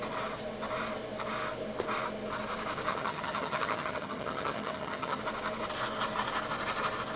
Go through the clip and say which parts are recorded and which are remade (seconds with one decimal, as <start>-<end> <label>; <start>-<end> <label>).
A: 0.0-2.9 recorded; 2.9-5.2 remade; 5.2-7.2 recorded